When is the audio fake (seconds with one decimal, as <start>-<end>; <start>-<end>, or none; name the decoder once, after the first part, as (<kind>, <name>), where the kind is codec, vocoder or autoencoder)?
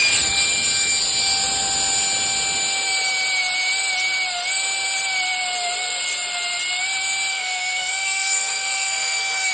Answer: 7.3-9.5 (codec, SNAC)